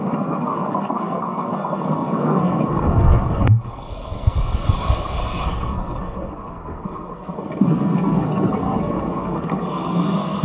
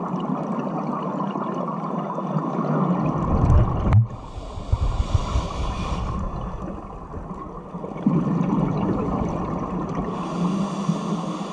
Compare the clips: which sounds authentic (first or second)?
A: second